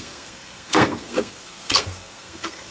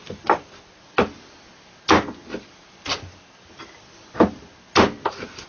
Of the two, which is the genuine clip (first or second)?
second